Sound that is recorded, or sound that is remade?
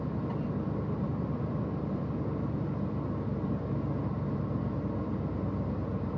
recorded